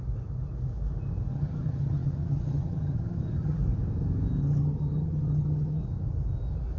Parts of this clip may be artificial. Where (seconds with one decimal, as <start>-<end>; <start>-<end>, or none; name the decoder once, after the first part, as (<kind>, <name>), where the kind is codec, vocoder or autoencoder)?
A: 1.3-3.6 (vocoder, HiFi-GAN); 4.4-5.8